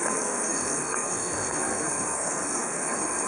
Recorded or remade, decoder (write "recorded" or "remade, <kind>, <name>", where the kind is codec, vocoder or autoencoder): remade, codec, SNAC